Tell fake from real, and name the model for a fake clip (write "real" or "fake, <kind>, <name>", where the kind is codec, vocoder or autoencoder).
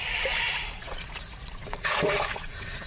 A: fake, vocoder, Vocos